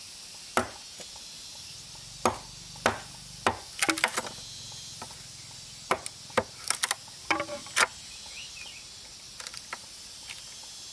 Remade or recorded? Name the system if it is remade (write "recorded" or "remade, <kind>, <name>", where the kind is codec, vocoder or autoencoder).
recorded